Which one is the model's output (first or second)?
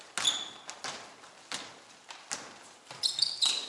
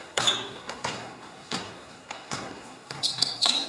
second